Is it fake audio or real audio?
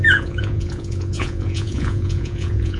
fake